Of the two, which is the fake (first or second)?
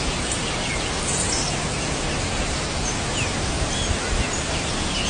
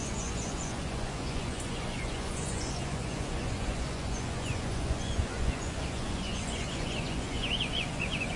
second